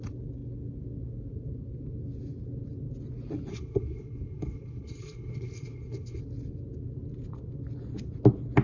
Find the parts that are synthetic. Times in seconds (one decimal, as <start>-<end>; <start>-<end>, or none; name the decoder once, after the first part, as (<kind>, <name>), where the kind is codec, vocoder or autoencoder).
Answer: 3.5-6.2 (codec, HILCodec)